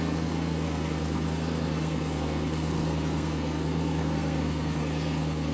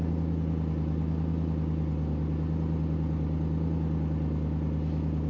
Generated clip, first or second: first